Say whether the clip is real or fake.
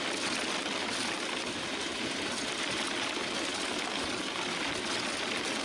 real